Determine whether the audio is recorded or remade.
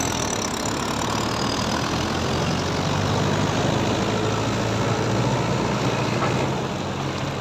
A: recorded